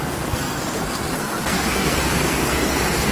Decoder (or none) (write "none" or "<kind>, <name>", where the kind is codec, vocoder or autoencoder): codec, SNAC